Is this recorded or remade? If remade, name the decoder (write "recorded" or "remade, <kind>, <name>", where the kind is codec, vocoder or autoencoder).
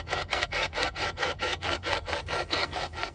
remade, codec, SNAC